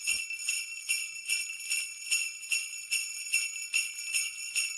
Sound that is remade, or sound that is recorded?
recorded